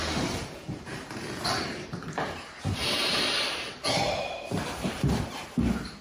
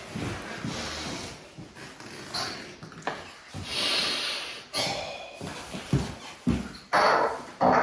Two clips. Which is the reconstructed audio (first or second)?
first